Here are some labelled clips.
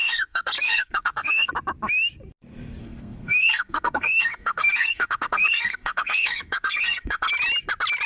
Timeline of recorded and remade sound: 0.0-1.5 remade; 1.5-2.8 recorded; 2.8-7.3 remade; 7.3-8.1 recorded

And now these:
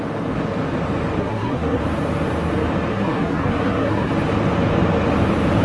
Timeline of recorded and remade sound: 0.0-1.2 recorded; 1.2-1.8 remade; 1.8-2.9 recorded; 2.9-4.1 remade; 4.1-5.6 recorded